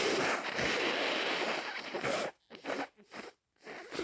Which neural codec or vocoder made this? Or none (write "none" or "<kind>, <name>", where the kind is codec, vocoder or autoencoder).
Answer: none